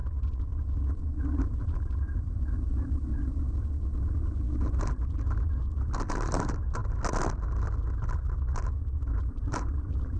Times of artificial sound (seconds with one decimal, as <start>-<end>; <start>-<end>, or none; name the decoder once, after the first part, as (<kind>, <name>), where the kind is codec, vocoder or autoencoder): 1.6-3.1 (vocoder, BigVGAN v2); 5.1-5.6; 6.1-6.8; 9.1-10.2